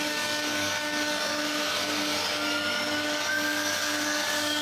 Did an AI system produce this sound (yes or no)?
yes